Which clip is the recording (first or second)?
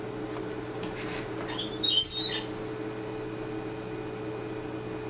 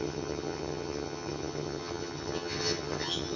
first